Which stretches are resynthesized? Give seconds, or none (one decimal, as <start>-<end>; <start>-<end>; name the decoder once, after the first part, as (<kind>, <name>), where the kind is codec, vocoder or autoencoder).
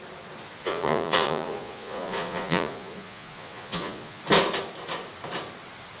0.6-4.2 (vocoder, Vocos)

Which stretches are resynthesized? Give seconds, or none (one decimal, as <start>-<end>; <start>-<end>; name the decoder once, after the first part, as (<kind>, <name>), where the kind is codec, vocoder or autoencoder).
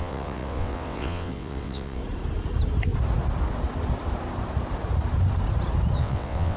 0.0-2.0 (vocoder, WaveNeXt); 6.0-6.6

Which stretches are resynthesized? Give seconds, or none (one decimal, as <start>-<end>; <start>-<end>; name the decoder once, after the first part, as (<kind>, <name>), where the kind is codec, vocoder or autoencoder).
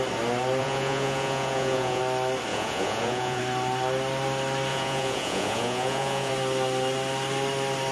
0.6-2.0 (vocoder, Vocos); 2.5-3.4; 4.7-6.3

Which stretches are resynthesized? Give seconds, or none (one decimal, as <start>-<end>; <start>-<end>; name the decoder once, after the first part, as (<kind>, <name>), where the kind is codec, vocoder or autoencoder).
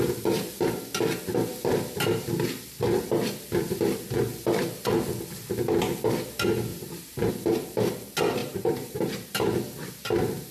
6.7-7.3 (vocoder, BigVGAN v2); 8.4-9.9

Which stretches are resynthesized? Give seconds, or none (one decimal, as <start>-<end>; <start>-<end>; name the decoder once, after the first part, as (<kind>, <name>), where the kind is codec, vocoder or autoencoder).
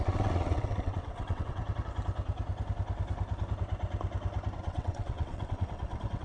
0.0-1.6 (vocoder, WaveNeXt); 4.6-6.2